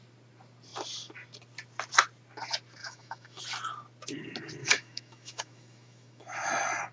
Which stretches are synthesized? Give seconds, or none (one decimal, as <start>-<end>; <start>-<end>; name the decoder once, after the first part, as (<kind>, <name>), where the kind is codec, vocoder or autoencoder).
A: 2.8-3.4 (autoencoder, DAC-VAE); 4.6-6.5